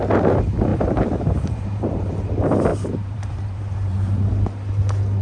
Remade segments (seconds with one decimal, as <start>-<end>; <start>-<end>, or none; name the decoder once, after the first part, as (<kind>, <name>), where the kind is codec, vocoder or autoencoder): 0.7-2.1 (vocoder, BigVGAN v2); 2.7-4.3